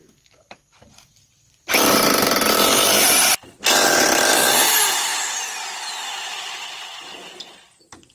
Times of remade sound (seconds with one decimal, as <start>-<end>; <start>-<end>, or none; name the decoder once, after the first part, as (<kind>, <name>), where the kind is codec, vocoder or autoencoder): 0.0-5.1 (vocoder, BigVGAN v2); 5.9-8.1